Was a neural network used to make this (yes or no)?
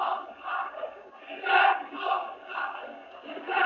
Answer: yes